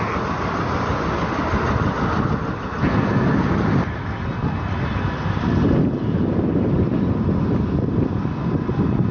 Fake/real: real